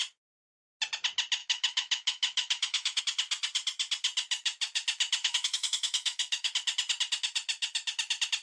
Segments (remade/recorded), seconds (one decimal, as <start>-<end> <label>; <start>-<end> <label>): 0.0-1.4 recorded; 1.4-3.0 remade; 3.0-5.2 recorded; 5.2-6.5 remade; 6.5-8.4 recorded